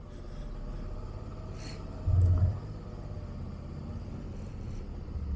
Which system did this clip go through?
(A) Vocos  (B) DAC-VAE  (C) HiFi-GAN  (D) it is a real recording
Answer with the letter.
D